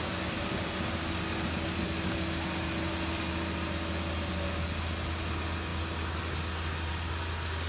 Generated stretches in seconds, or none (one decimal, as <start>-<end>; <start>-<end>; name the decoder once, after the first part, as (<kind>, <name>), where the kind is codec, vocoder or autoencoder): none